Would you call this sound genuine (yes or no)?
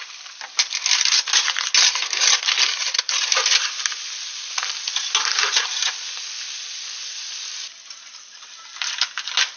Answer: yes